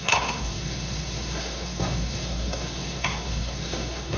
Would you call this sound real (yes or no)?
no